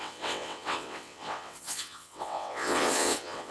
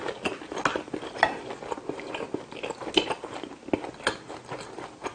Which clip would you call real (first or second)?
second